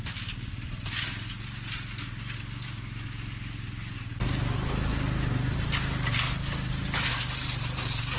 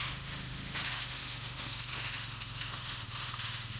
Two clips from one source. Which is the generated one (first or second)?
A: second